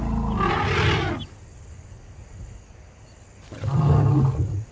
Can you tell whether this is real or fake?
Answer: real